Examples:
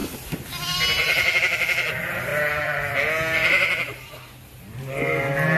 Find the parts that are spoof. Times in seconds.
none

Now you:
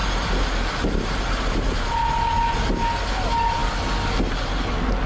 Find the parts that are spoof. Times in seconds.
none

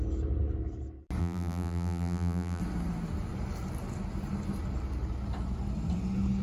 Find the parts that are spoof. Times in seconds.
1.2-2.6 (vocoder, BigVGAN v2)

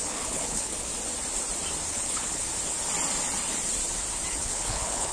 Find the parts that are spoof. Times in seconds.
0.0-0.9 (codec, HILCodec); 1.9-2.5; 4.3-5.1

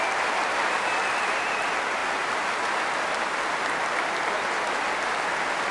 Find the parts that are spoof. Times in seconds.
none